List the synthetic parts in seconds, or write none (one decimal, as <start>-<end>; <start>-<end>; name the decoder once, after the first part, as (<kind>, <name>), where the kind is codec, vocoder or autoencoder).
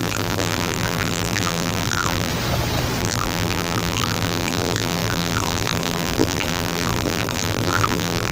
0.0-2.3 (vocoder, BigVGAN v2); 3.0-8.3